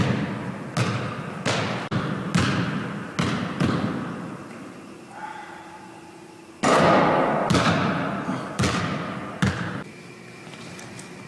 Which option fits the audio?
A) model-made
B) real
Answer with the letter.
B